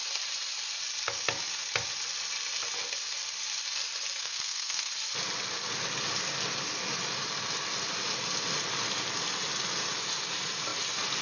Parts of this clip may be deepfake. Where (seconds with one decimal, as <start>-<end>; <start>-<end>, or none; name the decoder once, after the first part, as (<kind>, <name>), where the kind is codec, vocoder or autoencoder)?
4.2-4.9 (codec, SNAC)